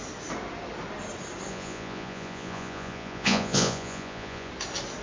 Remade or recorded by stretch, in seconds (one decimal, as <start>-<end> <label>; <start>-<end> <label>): 0.0-1.5 recorded; 1.5-4.5 remade; 4.5-5.0 recorded